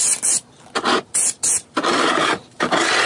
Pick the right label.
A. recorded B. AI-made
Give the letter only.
A